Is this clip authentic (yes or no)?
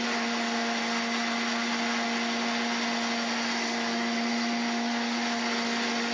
yes